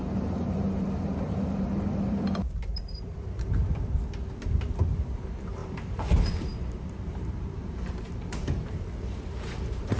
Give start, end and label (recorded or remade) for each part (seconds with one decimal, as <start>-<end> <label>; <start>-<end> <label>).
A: 0.0-3.6 remade; 3.6-4.9 recorded; 4.9-10.0 remade